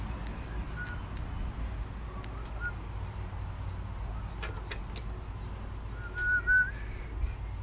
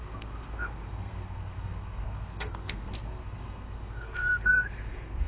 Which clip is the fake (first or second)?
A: second